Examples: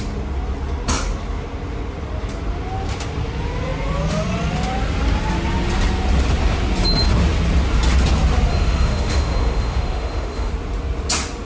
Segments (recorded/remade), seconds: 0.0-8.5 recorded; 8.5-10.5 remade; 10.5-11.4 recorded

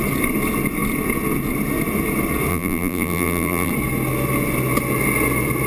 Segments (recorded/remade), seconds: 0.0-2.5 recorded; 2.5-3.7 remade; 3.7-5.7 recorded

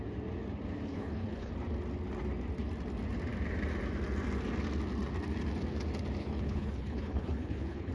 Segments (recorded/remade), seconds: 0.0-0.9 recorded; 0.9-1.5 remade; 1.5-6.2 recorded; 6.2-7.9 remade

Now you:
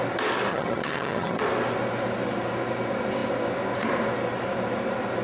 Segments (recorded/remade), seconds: 0.0-0.5 recorded; 0.5-1.4 remade; 1.4-5.2 recorded

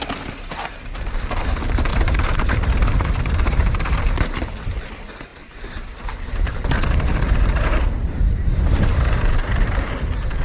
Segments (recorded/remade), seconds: 0.0-1.9 recorded; 1.9-4.0 remade; 4.0-5.3 recorded; 5.3-9.9 remade; 9.9-10.4 recorded

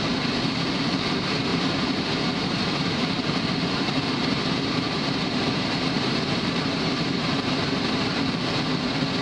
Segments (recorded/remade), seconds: 0.0-1.5 recorded; 1.5-3.1 remade; 3.1-4.2 recorded; 4.2-8.2 remade; 8.2-9.2 recorded